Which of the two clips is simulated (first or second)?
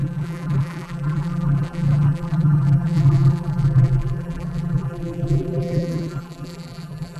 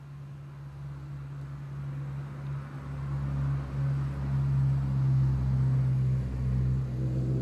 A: first